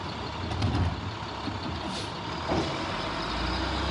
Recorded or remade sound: recorded